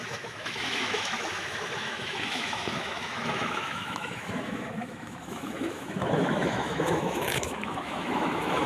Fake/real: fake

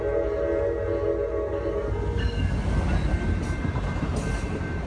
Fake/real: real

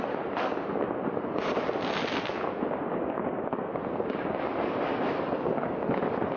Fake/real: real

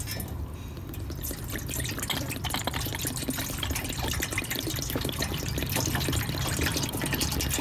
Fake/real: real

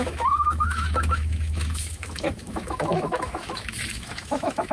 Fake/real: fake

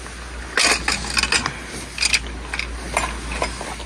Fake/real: real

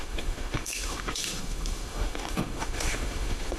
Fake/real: fake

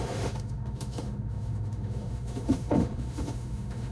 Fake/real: fake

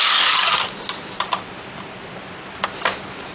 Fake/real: real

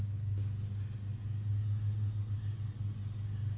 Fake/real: real